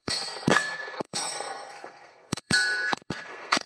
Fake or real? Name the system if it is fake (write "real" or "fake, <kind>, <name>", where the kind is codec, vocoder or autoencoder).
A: fake, codec, SNAC